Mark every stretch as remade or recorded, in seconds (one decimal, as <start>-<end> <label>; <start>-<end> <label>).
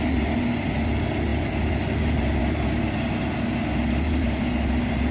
0.0-5.1 recorded